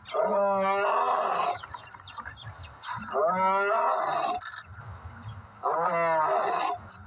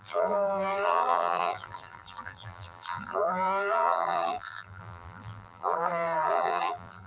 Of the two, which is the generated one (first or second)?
second